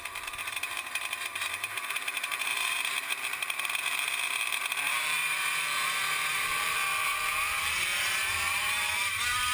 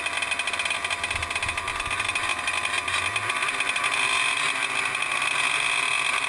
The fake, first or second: first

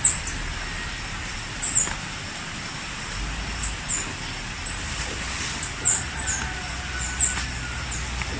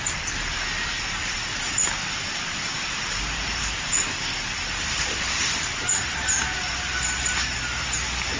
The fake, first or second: second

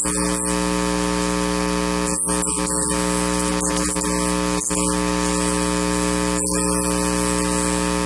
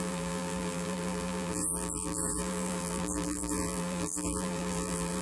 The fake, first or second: second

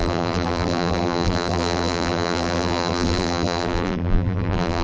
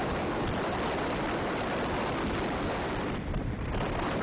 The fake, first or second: first